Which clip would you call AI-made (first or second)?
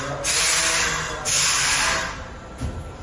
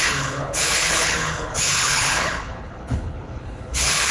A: second